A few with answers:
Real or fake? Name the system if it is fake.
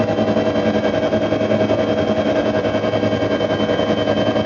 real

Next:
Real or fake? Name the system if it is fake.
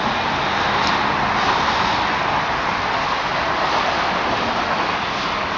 real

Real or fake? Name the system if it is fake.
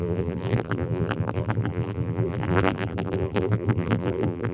fake, vocoder, BigVGAN v2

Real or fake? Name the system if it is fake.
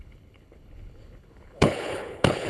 fake, codec, HILCodec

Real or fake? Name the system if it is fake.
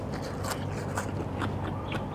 real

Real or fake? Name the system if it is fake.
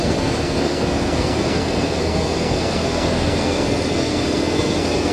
fake, codec, SNAC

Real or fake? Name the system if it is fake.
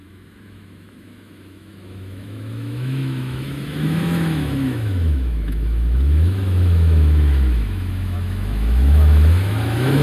fake, autoencoder, DAC-VAE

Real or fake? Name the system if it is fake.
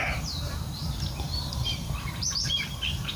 fake, vocoder, BigVGAN v2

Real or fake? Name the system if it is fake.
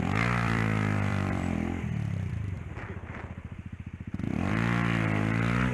fake, vocoder, BigVGAN v2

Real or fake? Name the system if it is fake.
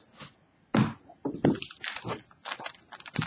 real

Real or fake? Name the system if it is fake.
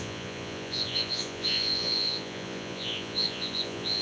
fake, vocoder, Vocos